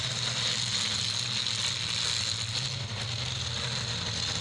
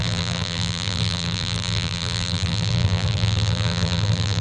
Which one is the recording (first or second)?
first